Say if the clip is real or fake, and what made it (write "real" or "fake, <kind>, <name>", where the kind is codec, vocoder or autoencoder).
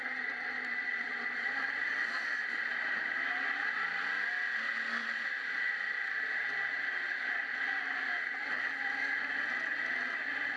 real